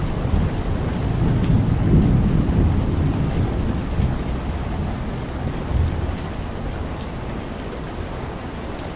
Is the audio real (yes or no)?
yes